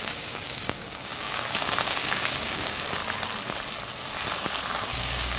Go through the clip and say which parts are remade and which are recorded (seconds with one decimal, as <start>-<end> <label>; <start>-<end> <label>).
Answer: 0.0-3.0 remade; 3.0-4.8 recorded; 4.8-5.4 remade